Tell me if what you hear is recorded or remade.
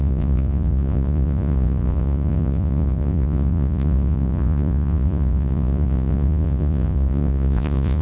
remade